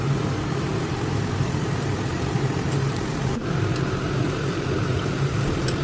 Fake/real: fake